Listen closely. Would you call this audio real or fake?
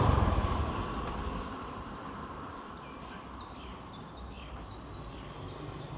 real